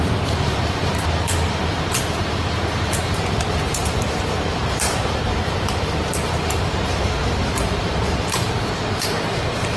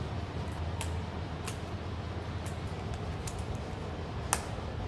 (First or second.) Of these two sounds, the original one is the second